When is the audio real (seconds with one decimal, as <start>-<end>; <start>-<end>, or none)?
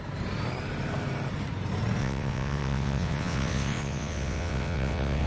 0.0-2.0